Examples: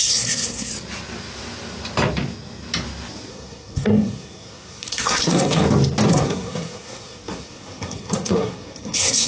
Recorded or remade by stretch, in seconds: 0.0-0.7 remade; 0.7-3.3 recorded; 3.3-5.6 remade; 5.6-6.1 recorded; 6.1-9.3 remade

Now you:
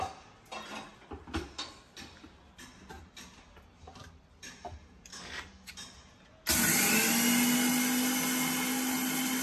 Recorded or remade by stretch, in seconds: 0.0-5.1 recorded; 5.1-5.7 remade; 5.7-9.4 recorded